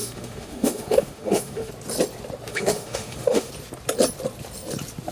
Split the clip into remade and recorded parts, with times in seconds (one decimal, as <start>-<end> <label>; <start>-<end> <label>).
0.0-1.7 remade; 1.7-2.5 recorded; 2.5-3.5 remade; 3.5-5.1 recorded